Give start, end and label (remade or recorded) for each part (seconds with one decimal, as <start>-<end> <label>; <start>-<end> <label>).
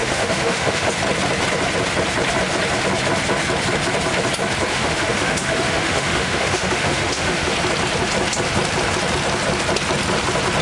0.0-0.9 remade; 0.9-4.7 recorded; 4.7-7.5 remade; 7.5-10.6 recorded